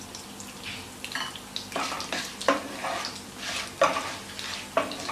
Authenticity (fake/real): real